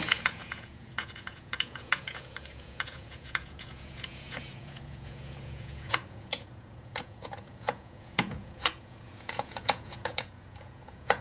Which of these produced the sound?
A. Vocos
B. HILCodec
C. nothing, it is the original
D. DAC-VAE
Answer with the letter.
A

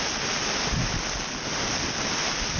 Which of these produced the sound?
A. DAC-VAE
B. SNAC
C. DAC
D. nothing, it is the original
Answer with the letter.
D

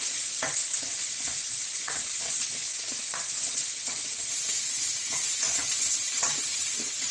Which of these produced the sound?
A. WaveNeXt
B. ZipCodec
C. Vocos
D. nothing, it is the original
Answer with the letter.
A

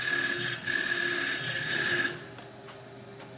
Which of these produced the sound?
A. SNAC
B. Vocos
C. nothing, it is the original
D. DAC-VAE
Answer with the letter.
C